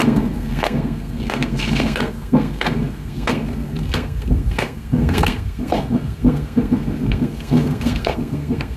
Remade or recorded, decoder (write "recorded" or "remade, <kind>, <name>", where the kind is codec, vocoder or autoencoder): remade, codec, SNAC